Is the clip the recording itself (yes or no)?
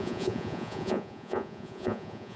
no